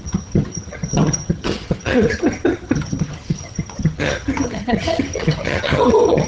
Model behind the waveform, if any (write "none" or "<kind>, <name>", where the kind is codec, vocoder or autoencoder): vocoder, HiFi-GAN